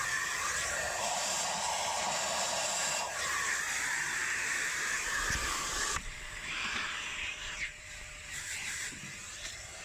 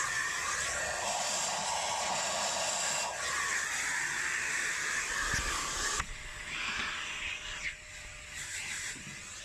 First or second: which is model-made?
first